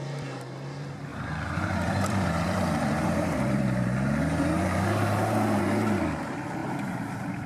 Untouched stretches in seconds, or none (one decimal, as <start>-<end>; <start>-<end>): 0.0-1.1; 5.6-6.6